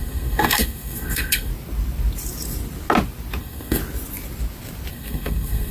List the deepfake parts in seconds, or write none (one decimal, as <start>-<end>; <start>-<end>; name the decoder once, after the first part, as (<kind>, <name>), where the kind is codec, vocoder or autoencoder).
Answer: 0.0-1.5 (codec, SNAC); 3.4-3.8; 4.9-5.7